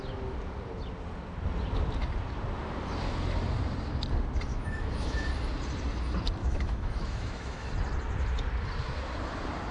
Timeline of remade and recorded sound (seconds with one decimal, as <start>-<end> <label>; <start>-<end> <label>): 0.0-4.5 recorded; 4.5-5.3 remade; 5.3-6.4 recorded; 6.4-7.7 remade; 7.7-9.7 recorded